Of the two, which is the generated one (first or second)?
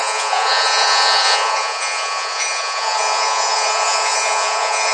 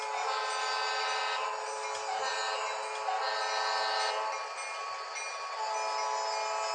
first